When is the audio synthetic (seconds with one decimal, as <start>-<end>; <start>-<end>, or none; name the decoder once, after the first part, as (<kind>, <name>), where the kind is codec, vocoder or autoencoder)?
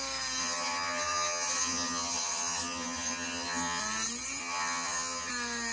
0.4-3.8 (vocoder, HiFi-GAN); 4.4-5.3